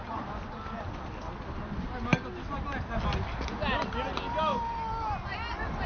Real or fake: real